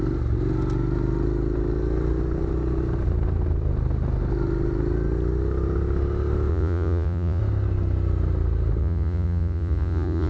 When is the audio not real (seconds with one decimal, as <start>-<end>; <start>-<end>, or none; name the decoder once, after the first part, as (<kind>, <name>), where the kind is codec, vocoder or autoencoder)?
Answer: 6.5-7.4 (vocoder, Vocos); 8.8-10.3